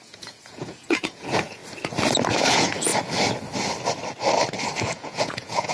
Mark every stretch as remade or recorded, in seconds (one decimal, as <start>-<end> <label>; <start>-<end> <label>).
0.0-1.6 remade; 1.6-2.5 recorded; 2.5-2.9 remade; 2.9-4.8 recorded; 4.8-5.7 remade